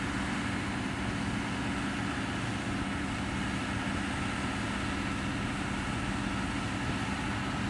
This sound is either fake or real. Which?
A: real